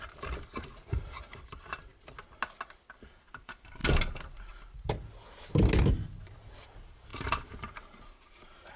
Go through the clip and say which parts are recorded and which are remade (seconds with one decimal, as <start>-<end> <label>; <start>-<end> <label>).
0.0-1.9 remade; 1.9-2.9 recorded; 2.9-3.8 remade; 3.8-6.2 recorded; 6.2-8.8 remade

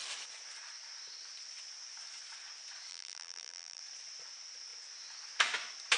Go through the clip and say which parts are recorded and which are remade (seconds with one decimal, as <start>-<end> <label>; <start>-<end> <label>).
0.0-2.9 recorded; 2.9-3.8 remade; 3.8-6.0 recorded

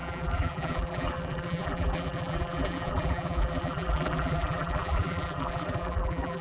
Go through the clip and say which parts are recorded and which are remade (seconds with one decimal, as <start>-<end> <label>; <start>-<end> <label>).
0.0-6.4 remade

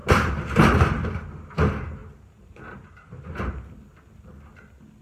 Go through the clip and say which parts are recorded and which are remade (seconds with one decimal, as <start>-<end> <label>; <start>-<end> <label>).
0.0-1.4 remade; 1.4-2.0 recorded; 2.0-3.5 remade; 3.5-5.0 recorded

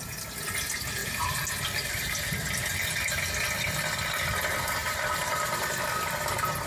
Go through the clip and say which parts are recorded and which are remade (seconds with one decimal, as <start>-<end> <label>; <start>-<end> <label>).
0.0-1.0 recorded; 1.0-2.3 remade; 2.3-4.8 recorded; 4.8-6.7 remade

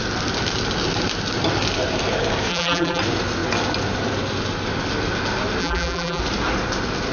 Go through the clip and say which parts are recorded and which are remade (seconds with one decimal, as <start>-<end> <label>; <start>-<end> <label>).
0.0-2.5 recorded; 2.5-3.0 remade; 3.0-5.6 recorded; 5.6-6.2 remade; 6.2-7.1 recorded

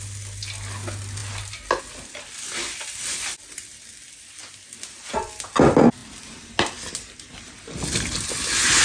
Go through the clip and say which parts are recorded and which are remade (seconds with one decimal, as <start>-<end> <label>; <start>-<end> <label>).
0.0-8.8 recorded